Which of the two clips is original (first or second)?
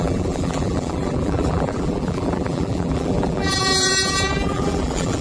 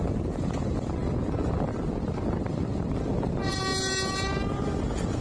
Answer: second